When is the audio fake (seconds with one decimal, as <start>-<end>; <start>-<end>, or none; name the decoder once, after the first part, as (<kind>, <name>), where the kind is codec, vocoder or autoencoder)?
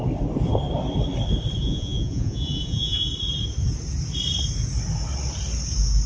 1.6-3.1 (vocoder, Vocos)